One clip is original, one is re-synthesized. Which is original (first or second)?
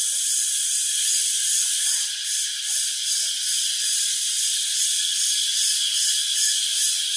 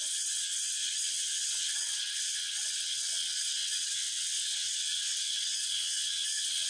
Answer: first